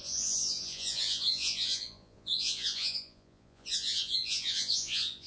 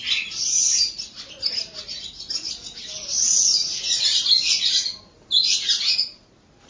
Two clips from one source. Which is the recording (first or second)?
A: second